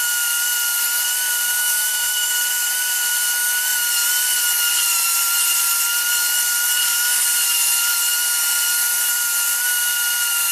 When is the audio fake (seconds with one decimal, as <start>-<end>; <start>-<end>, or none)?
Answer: 1.6-2.3